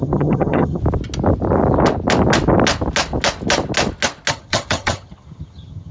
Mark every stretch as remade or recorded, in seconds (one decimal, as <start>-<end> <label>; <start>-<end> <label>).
0.0-0.8 remade; 0.8-4.3 recorded; 4.3-5.9 remade